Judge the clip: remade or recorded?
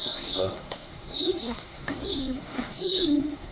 remade